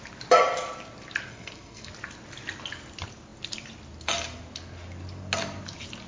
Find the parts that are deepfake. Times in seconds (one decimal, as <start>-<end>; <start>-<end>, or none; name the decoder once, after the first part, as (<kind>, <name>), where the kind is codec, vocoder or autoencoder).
1.3-1.9 (codec, SNAC)